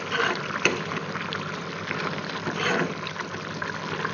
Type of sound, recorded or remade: remade